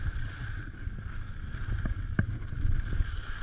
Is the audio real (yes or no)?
yes